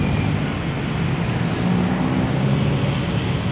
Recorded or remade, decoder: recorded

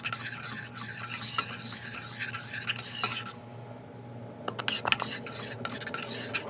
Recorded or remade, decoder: recorded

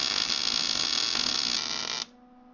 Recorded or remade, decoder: recorded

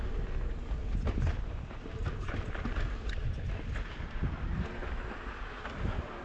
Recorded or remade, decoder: recorded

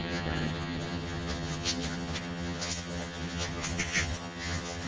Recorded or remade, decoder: remade, vocoder, HiFi-GAN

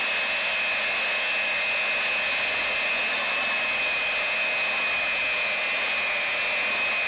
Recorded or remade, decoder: recorded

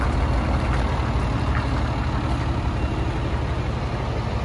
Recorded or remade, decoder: recorded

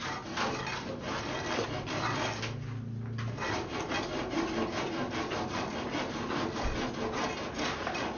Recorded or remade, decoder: recorded